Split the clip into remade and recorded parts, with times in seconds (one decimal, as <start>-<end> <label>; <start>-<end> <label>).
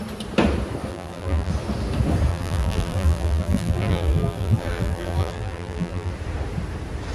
0.0-0.9 recorded; 0.9-1.5 remade; 1.5-2.3 recorded; 2.3-6.1 remade; 6.1-7.1 recorded